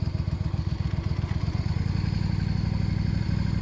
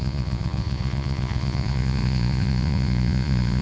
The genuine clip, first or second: first